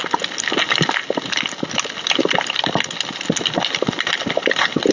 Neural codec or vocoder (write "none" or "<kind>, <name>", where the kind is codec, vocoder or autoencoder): none